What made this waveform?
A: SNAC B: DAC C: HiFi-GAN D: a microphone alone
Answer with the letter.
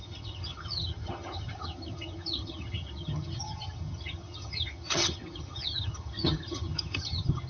C